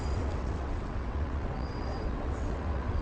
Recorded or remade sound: remade